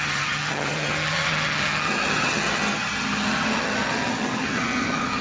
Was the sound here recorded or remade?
remade